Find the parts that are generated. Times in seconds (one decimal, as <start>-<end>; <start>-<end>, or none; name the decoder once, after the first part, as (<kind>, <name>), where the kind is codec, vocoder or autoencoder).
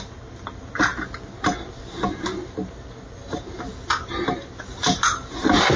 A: none